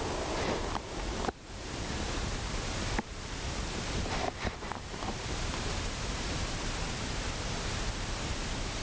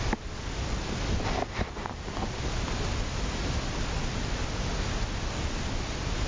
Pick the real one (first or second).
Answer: second